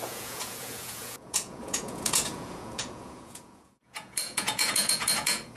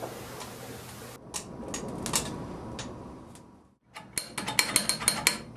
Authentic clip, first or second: second